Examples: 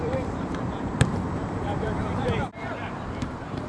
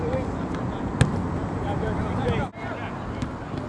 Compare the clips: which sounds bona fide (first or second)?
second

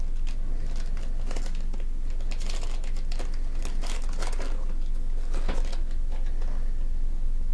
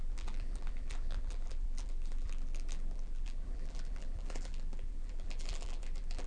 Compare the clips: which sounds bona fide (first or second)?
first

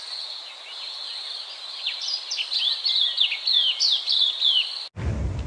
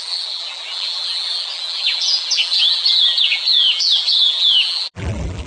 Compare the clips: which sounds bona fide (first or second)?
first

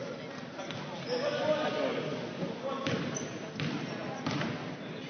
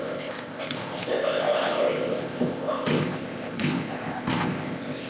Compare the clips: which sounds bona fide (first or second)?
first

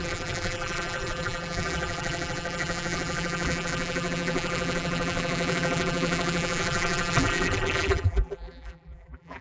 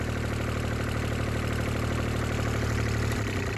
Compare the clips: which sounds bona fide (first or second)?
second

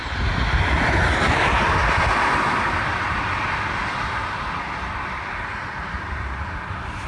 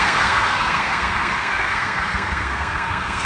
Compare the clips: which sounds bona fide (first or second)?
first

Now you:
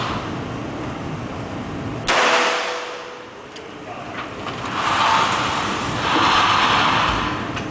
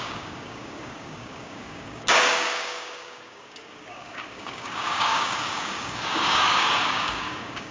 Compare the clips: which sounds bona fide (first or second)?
first